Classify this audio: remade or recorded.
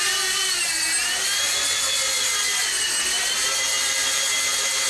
recorded